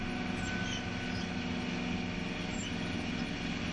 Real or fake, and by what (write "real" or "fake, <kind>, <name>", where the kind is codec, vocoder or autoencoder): real